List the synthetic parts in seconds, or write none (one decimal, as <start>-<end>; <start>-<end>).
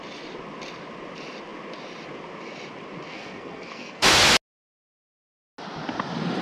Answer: 3.1-4.1